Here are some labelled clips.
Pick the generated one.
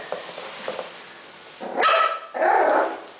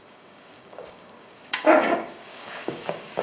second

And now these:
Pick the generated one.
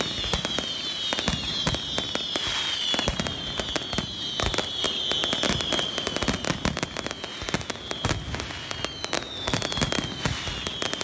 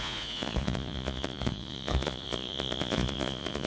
second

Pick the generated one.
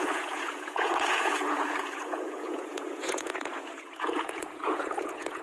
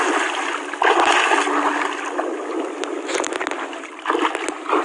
first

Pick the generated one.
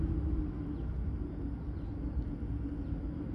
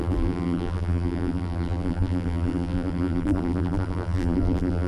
second